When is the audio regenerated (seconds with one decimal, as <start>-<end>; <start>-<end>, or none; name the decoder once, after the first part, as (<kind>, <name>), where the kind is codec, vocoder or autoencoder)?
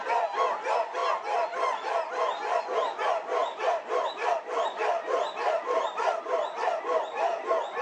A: 3.4-6.8 (vocoder, BigVGAN v2)